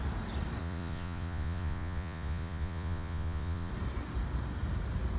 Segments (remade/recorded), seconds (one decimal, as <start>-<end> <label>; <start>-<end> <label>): 0.0-0.6 recorded; 0.6-3.7 remade; 3.7-5.2 recorded